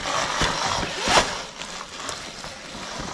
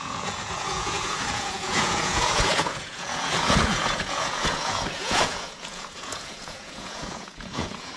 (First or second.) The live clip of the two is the first